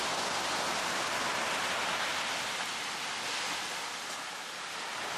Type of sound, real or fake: real